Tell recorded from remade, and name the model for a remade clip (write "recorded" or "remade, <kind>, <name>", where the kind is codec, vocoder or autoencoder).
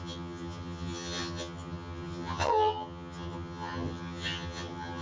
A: remade, vocoder, HiFi-GAN